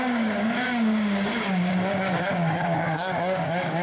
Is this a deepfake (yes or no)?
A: yes